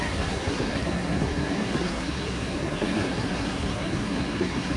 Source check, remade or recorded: remade